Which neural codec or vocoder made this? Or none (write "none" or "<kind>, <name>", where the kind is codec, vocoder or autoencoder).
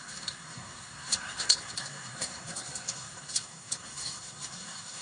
codec, SNAC